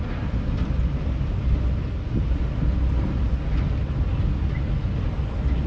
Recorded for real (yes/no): yes